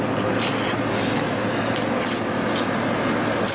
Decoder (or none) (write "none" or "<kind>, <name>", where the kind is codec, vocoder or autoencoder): none